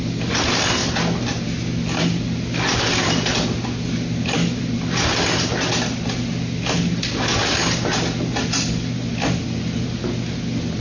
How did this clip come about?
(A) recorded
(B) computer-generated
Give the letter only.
A